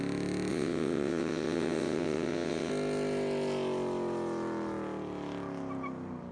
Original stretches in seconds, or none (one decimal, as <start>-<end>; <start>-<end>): 0.0-0.5; 2.7-6.3